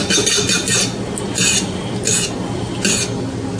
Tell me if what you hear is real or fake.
real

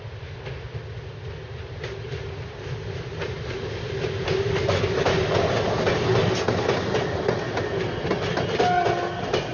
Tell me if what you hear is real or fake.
real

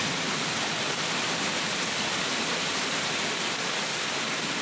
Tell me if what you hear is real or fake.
real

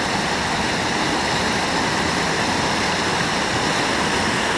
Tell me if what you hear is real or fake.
real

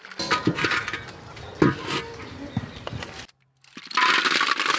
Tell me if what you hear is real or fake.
real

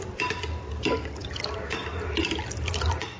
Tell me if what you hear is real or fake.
real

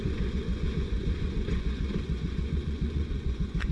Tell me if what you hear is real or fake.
fake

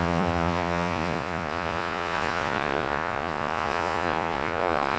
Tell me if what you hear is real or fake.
fake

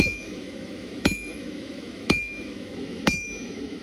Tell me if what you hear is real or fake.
fake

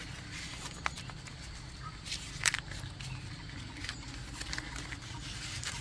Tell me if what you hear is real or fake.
real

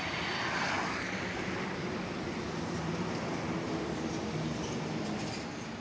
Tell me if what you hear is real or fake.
real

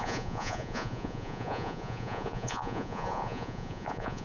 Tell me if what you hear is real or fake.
fake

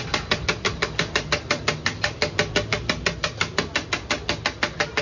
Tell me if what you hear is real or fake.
real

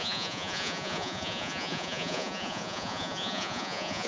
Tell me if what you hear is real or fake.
fake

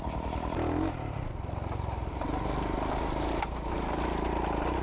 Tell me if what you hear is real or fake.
real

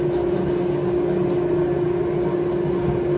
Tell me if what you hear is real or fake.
real